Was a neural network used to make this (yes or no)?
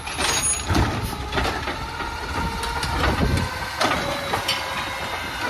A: no